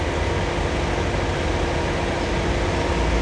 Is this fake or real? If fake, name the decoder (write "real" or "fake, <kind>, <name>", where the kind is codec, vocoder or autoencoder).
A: real